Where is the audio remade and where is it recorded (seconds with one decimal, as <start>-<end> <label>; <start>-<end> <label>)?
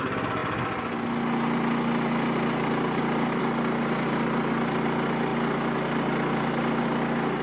0.0-7.4 recorded